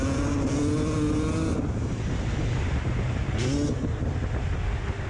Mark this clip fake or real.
real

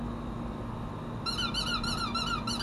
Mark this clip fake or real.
real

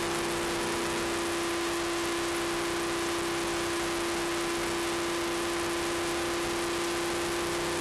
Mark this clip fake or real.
real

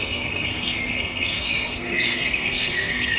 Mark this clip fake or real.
fake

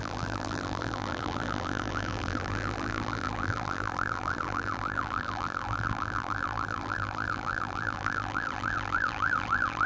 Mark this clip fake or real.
fake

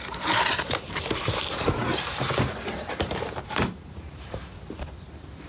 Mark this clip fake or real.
fake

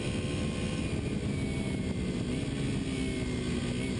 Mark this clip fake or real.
real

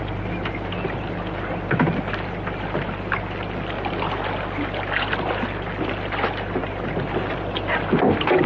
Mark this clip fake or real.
real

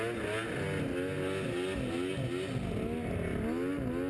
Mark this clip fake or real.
real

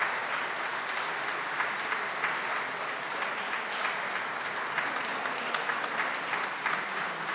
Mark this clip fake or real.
real